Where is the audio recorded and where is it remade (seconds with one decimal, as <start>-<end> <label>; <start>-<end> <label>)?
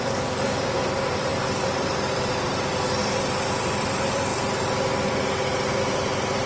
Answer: 0.0-3.0 remade; 3.0-3.6 recorded; 3.6-4.3 remade; 4.3-5.7 recorded; 5.7-6.5 remade